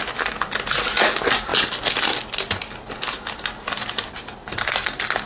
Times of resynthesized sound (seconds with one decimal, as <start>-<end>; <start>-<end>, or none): none